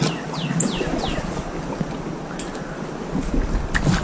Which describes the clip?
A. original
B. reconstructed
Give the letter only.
A